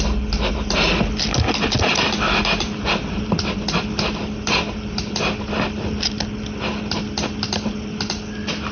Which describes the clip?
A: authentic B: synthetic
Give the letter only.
A